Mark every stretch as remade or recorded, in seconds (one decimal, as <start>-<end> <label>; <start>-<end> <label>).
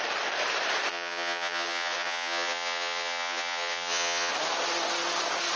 0.0-0.9 recorded; 0.9-4.3 remade; 4.3-5.6 recorded